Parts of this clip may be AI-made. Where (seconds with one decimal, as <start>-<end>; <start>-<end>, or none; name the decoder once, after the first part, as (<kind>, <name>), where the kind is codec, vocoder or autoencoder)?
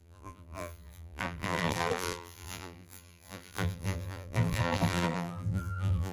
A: 0.0-6.1 (vocoder, BigVGAN v2)